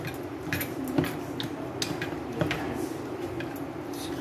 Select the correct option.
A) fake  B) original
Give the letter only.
B